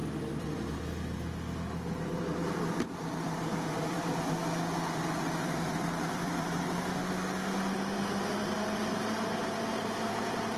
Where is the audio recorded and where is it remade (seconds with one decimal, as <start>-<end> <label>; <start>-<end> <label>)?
0.0-0.8 remade; 0.8-2.4 recorded; 2.4-6.6 remade; 6.6-10.6 recorded